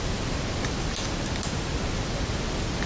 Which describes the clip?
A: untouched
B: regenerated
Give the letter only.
A